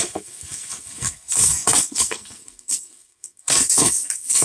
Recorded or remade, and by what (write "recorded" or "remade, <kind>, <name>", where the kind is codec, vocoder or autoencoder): remade, codec, SNAC